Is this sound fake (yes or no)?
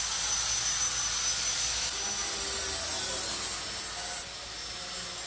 no